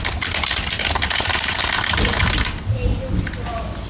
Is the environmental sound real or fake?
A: real